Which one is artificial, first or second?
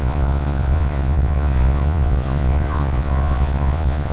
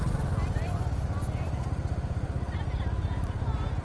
first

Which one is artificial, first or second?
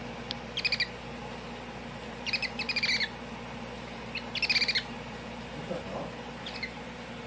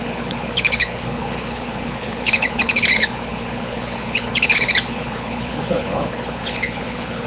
second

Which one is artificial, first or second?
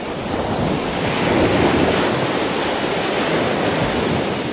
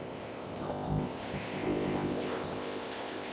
second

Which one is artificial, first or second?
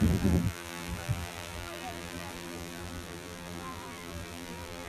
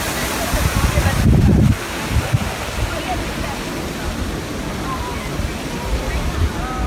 first